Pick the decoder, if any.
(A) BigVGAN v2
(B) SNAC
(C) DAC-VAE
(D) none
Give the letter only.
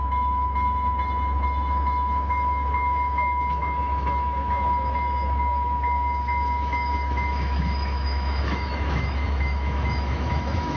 C